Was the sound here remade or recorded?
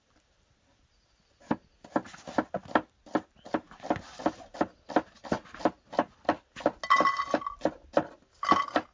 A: recorded